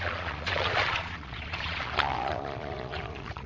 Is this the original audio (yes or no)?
no